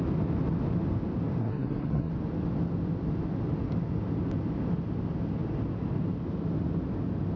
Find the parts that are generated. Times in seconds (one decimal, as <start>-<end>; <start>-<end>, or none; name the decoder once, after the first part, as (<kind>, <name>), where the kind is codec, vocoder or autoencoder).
1.4-2.1 (codec, SNAC)